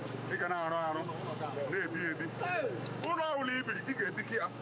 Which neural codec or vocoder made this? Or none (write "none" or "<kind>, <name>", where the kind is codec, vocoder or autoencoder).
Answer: codec, DAC